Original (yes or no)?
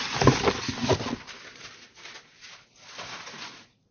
yes